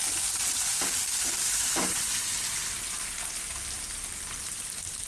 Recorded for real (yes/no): yes